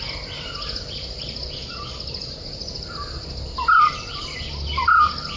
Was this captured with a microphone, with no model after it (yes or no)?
yes